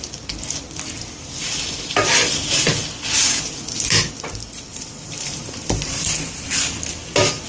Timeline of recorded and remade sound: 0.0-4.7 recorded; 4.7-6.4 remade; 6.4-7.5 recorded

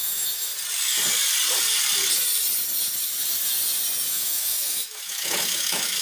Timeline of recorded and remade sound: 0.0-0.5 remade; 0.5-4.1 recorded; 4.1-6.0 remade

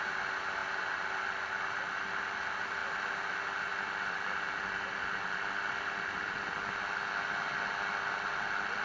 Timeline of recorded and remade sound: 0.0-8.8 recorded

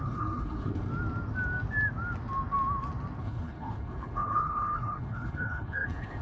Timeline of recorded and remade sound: 0.0-0.9 remade; 0.9-3.2 recorded; 3.2-6.2 remade